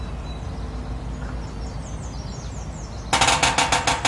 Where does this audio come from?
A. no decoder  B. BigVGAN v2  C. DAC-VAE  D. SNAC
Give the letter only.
A